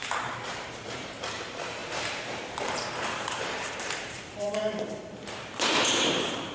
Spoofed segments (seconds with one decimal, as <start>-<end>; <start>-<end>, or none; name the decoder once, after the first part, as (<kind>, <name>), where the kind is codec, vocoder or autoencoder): 0.0-6.5 (vocoder, BigVGAN v2)